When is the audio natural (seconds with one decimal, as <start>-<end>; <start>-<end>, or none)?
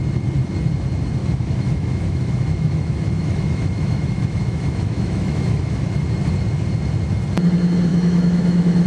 0.0-1.2; 6.0-7.9